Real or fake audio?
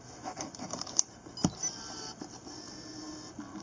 real